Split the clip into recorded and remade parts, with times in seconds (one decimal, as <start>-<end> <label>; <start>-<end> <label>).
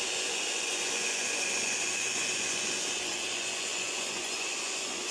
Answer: 0.0-5.1 remade